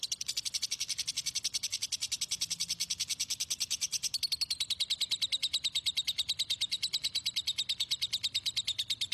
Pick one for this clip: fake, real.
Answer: real